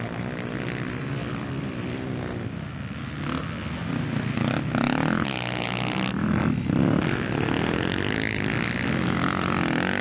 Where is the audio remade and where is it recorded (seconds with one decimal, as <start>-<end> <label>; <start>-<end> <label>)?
0.0-10.0 recorded